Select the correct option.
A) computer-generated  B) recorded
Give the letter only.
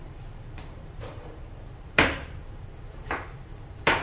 A